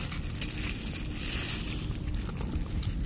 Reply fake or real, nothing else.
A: real